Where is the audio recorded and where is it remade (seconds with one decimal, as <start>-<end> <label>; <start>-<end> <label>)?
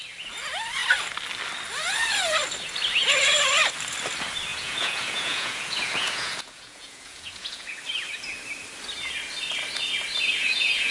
0.0-4.5 recorded; 4.5-7.8 remade; 7.8-10.4 recorded; 10.4-10.9 remade